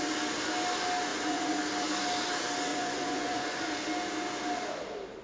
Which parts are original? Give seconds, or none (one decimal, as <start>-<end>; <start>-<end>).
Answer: 0.0-1.1; 1.6-2.7; 3.7-5.2